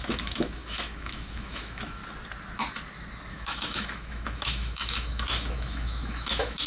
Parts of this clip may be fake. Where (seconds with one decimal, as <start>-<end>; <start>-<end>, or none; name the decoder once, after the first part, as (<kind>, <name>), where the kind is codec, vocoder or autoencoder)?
0.0-2.0 (autoencoder, DAC-VAE); 3.3-6.7